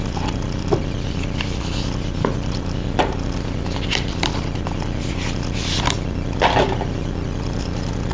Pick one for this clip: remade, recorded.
recorded